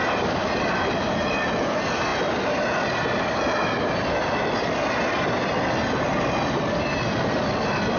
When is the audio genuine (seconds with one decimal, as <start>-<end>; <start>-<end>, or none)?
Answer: 0.0-8.0